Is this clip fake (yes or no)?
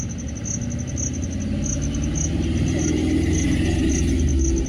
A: no